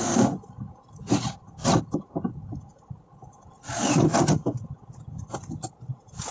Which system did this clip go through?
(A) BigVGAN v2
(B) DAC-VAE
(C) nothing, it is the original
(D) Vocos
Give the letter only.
C